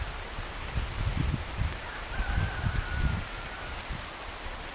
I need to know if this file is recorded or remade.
remade